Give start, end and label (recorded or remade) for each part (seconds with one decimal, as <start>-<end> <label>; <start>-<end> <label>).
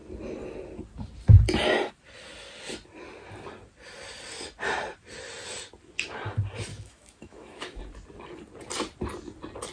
0.0-6.7 recorded; 6.7-7.8 remade; 7.8-9.7 recorded